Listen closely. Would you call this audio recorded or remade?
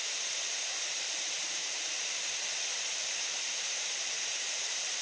remade